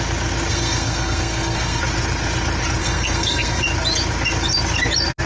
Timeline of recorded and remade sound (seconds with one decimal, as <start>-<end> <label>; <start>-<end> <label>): 0.0-0.5 recorded; 0.5-1.8 remade; 1.8-2.8 recorded; 2.8-3.6 remade; 3.6-5.3 recorded